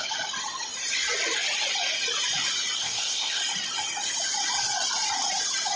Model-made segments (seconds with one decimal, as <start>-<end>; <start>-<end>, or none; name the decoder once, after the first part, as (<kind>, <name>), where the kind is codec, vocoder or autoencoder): 2.8-3.4 (codec, ZipCodec)